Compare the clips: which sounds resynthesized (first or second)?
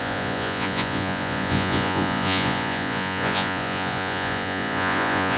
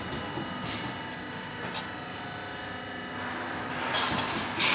first